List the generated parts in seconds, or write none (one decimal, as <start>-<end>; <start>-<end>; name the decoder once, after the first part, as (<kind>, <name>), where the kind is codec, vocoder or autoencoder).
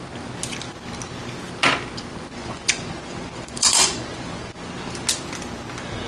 2.1-4.6 (vocoder, Vocos)